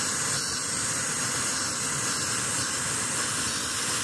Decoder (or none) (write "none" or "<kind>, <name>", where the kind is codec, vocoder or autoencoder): none